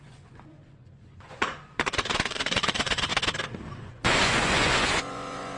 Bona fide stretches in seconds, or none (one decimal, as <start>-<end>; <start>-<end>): 3.1-3.8